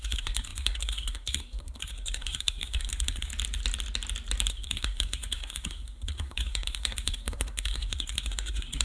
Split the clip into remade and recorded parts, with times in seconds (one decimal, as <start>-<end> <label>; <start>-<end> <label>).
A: 0.0-3.3 remade; 3.3-4.5 recorded; 4.5-8.8 remade